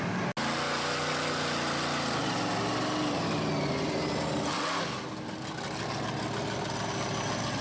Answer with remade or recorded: recorded